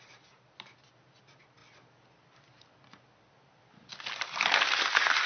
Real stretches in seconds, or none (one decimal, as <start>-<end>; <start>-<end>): 0.0-5.3